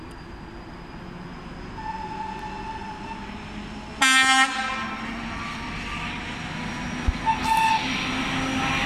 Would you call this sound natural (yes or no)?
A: yes